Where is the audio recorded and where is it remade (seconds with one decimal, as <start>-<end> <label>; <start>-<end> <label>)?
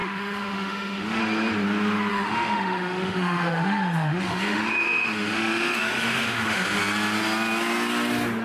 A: 0.0-1.2 remade; 1.2-2.1 recorded; 2.1-6.8 remade; 6.8-8.4 recorded